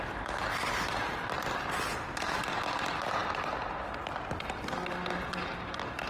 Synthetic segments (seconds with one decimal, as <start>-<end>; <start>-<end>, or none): none